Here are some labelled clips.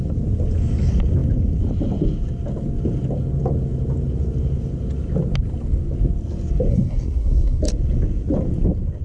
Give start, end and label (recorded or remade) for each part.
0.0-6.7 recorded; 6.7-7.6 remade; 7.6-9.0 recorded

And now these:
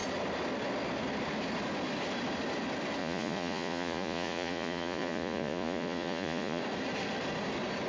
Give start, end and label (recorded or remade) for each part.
0.0-3.0 recorded; 3.0-6.6 remade; 6.6-7.9 recorded

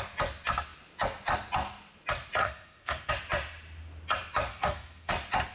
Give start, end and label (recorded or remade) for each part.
0.0-2.4 recorded; 2.4-3.1 remade; 3.1-4.5 recorded; 4.5-5.1 remade; 5.1-5.5 recorded

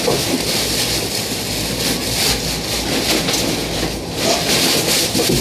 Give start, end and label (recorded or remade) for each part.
0.0-5.4 recorded

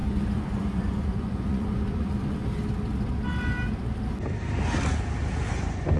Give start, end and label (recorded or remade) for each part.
0.0-2.4 remade; 2.4-5.5 recorded; 5.5-6.0 remade

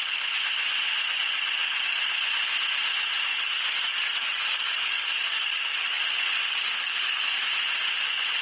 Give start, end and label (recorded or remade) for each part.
0.0-3.3 recorded; 3.3-6.0 remade; 6.0-6.5 recorded; 6.5-7.5 remade; 7.5-8.4 recorded

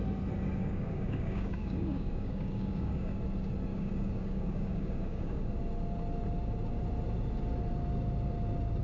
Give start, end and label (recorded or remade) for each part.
0.0-0.6 recorded; 0.6-3.2 remade; 3.2-3.7 recorded; 3.7-5.5 remade; 5.5-8.8 recorded

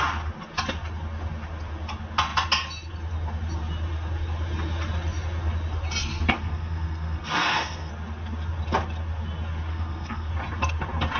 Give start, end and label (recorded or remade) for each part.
0.0-6.0 recorded; 6.0-7.9 remade; 7.9-9.7 recorded; 9.7-10.3 remade; 10.3-11.2 recorded